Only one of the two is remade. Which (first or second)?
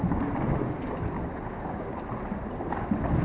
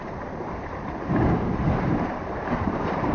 second